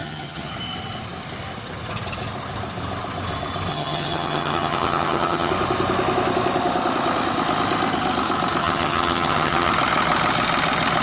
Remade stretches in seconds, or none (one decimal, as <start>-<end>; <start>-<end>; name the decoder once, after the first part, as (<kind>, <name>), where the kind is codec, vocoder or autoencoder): 0.0-0.5 (vocoder, HiFi-GAN); 3.7-5.5; 8.6-9.7